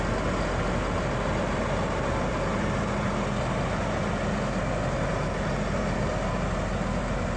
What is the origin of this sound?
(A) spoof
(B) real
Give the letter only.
B